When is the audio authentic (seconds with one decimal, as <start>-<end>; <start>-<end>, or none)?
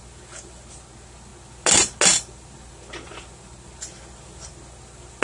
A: 0.0-5.2